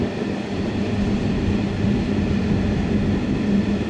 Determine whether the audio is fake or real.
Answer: real